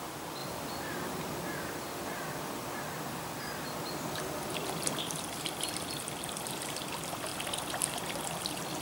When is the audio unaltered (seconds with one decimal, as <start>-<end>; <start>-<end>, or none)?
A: 0.4-5.0